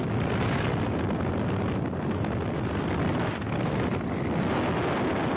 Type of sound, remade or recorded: recorded